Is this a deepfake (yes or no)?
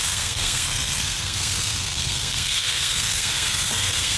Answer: yes